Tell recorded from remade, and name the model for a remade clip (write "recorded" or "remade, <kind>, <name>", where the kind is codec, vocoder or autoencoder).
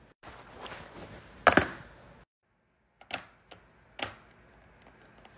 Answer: recorded